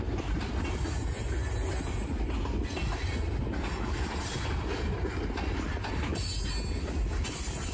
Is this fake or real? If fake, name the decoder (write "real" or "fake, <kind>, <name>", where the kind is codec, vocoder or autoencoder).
real